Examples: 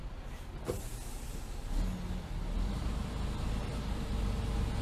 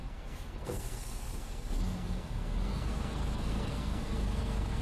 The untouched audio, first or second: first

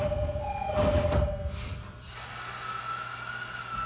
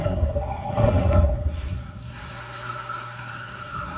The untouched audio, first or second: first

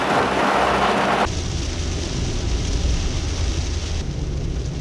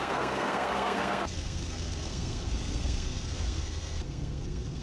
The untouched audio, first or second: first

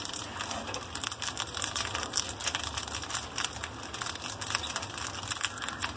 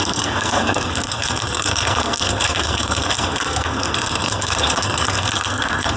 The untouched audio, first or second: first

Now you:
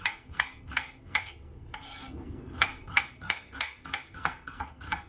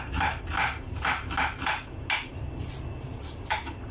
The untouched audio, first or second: second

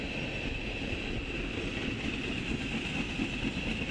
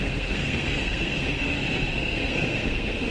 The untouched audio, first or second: first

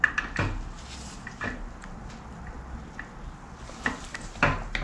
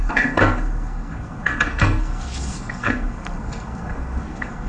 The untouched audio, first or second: first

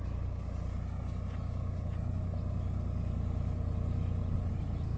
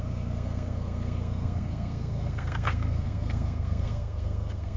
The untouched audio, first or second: first